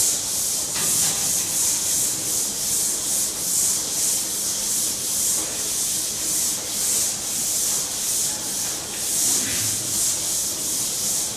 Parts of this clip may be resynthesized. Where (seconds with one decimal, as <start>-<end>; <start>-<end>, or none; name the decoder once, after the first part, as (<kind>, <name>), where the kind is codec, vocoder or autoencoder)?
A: none